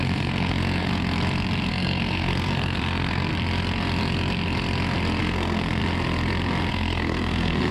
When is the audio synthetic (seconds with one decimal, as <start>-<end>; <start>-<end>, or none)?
0.0-0.9; 1.7-3.3; 5.2-5.8; 6.7-7.7